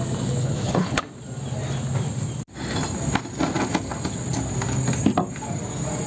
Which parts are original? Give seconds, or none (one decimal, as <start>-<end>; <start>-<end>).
0.0-0.4; 1.0-6.1